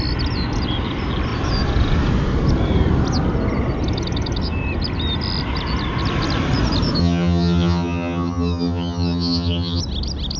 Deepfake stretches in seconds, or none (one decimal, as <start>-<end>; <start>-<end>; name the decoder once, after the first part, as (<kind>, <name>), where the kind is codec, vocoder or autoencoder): 7.0-9.8 (vocoder, HiFi-GAN)